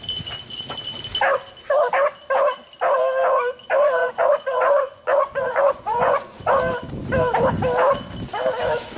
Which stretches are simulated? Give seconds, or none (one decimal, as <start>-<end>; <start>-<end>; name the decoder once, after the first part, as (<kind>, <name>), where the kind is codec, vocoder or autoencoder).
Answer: 4.0-6.5 (vocoder, Vocos)